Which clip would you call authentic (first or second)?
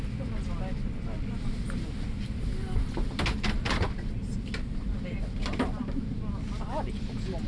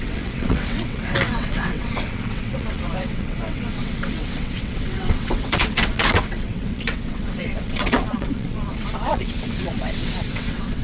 first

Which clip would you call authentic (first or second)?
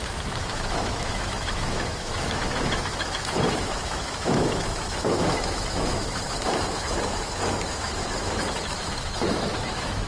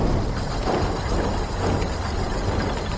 second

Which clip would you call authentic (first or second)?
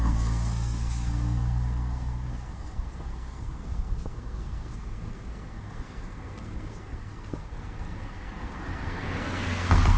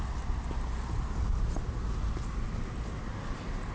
second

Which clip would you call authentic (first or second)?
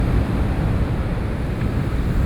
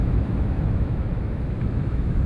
first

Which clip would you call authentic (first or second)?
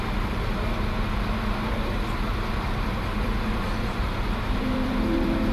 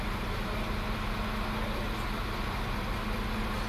second